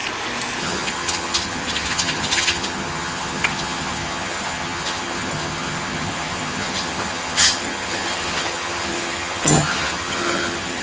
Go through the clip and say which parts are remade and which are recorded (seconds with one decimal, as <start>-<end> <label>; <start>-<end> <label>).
0.0-0.6 recorded; 0.6-10.8 remade